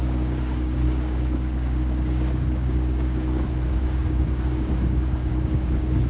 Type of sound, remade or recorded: remade